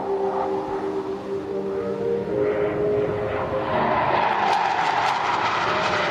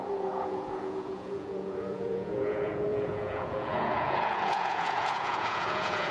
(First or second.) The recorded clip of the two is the first